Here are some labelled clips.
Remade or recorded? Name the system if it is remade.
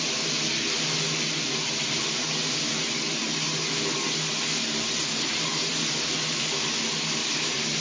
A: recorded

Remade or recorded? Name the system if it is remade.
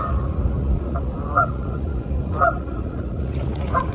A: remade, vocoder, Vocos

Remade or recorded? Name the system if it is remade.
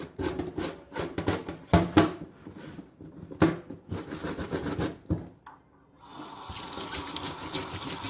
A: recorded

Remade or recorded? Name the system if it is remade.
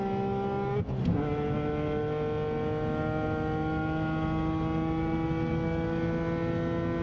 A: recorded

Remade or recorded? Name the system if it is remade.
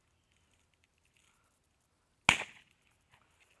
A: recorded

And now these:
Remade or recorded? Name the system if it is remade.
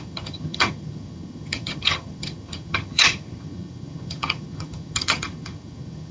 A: remade, vocoder, HiFi-GAN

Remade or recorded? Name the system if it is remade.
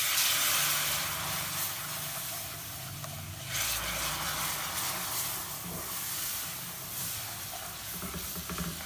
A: recorded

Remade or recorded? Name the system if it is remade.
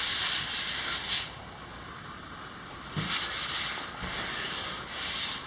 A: recorded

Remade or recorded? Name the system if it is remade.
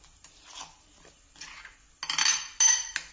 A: recorded